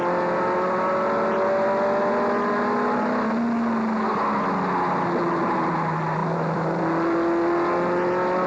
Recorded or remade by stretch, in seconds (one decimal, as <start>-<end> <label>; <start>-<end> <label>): 0.0-6.2 recorded; 6.2-6.8 remade; 6.8-8.5 recorded